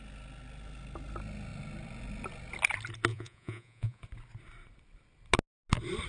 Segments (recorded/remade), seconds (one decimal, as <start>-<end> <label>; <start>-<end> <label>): 0.0-3.1 recorded; 3.1-4.0 remade; 4.0-6.1 recorded